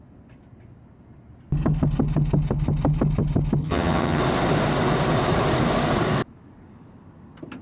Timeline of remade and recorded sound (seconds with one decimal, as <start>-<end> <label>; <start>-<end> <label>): 0.0-3.6 recorded; 3.6-4.2 remade; 4.2-7.6 recorded